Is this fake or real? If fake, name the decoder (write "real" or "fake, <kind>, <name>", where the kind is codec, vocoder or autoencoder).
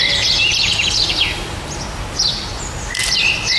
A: real